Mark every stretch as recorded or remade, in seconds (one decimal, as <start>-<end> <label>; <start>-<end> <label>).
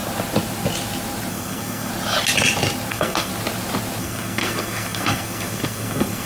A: 0.0-1.3 recorded; 1.3-1.9 remade; 1.9-2.9 recorded; 2.9-3.3 remade; 3.3-4.0 recorded; 4.0-6.3 remade